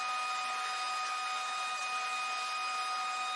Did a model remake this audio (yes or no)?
no